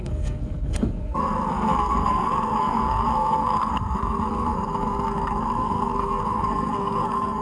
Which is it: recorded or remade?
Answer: remade